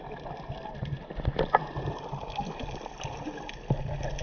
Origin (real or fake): real